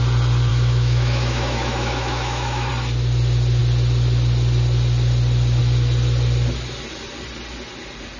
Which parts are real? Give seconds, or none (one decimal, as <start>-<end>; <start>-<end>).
0.0-0.5; 2.7-8.2